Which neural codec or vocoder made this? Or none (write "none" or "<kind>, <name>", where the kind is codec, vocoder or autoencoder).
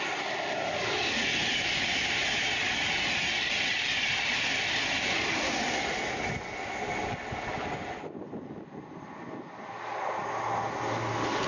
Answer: none